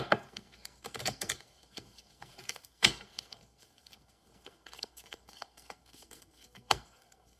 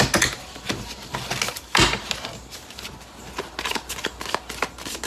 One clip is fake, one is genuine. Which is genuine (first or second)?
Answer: second